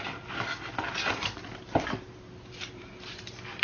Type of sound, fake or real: real